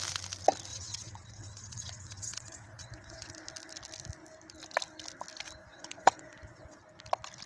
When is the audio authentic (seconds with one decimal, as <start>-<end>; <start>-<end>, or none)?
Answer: 0.0-0.7; 3.3-5.6; 6.8-7.5